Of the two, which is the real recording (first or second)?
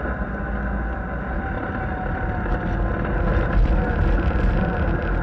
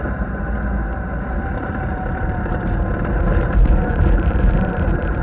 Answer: first